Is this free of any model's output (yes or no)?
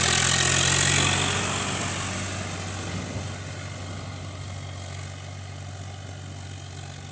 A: yes